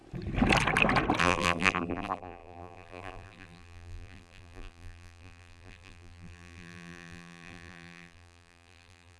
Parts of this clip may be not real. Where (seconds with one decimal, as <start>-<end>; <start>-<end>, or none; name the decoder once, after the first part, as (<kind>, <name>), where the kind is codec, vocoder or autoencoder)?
1.2-9.2 (vocoder, BigVGAN v2)